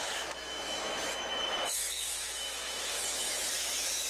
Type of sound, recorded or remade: remade